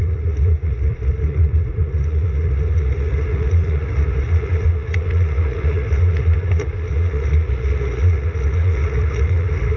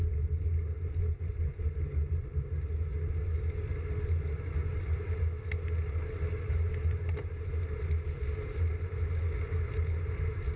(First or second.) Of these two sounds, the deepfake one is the first